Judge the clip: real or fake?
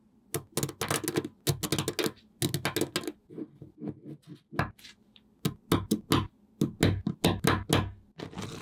real